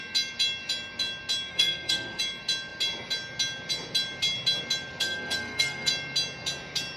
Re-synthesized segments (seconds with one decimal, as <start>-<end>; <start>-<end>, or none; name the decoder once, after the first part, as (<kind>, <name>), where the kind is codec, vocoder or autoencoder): 1.5-2.2 (codec, SNAC); 5.0-5.9